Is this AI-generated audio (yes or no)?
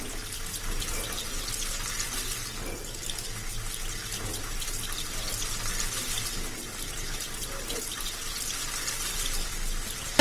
no